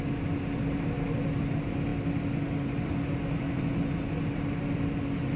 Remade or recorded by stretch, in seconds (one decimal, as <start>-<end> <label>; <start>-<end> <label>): 0.0-5.4 recorded